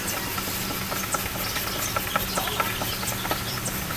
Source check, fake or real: real